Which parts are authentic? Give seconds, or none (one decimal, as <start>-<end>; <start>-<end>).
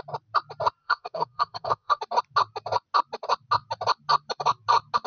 0.0-0.8; 2.0-5.1